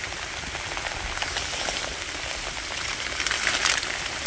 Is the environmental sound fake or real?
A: real